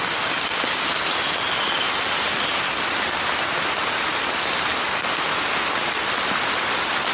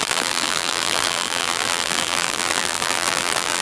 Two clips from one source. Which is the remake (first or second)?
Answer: second